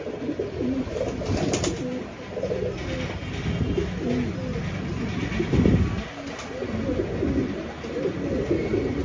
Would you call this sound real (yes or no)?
yes